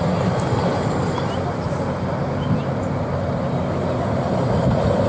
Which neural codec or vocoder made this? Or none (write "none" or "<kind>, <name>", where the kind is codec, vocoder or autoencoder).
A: none